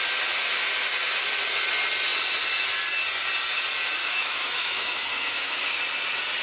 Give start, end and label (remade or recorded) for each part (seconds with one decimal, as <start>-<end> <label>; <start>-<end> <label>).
0.0-4.0 recorded; 4.0-5.8 remade; 5.8-6.4 recorded